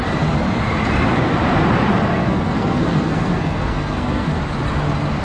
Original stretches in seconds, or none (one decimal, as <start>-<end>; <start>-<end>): 0.0-2.1; 4.4-5.2